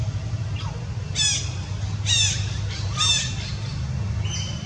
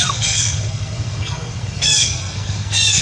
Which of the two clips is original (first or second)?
first